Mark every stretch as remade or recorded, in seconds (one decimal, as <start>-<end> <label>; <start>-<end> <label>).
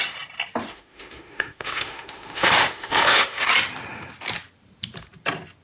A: 0.0-0.7 recorded; 0.7-3.5 remade; 3.5-5.6 recorded